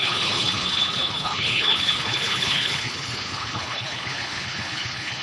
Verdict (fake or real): fake